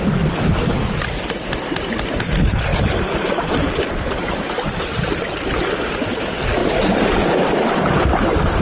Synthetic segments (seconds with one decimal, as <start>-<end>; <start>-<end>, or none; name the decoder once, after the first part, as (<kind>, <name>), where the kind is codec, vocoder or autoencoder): none